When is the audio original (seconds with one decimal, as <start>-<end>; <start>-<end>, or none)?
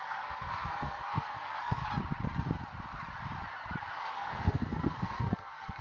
1.8-4.0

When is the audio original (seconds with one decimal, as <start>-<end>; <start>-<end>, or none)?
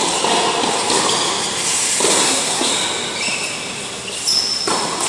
0.0-2.2; 2.7-5.1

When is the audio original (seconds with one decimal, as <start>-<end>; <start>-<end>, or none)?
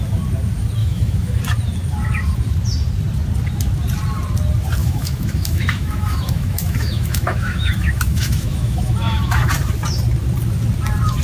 0.0-0.8; 1.4-4.8; 9.5-11.2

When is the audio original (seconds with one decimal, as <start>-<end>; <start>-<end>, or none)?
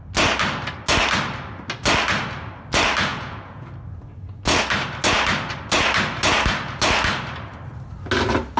0.0-3.1; 3.7-8.6